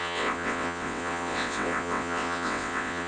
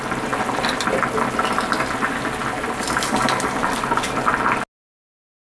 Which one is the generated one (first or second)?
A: first